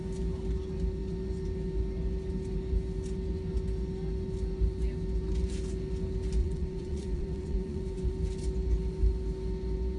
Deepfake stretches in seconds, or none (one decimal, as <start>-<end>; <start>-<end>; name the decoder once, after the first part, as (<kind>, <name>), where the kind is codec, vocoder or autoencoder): 6.4-8.1 (vocoder, Vocos)